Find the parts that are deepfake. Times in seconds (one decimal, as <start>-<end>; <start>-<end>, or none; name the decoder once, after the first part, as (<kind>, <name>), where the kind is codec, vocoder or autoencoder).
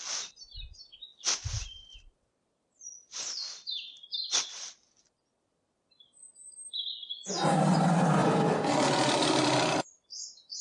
1.1-5.9 (vocoder, BigVGAN v2); 8.2-8.7